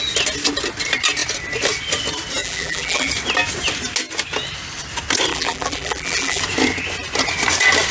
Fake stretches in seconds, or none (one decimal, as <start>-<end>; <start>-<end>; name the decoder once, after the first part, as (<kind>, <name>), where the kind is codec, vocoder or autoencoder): 2.4-3.1 (vocoder, BigVGAN v2); 5.3-6.4